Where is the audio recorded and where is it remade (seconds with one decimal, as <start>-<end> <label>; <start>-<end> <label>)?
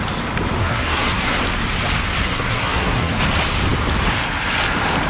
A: 0.0-0.6 recorded; 0.6-1.4 remade; 1.4-2.2 recorded; 2.2-3.2 remade; 3.2-5.1 recorded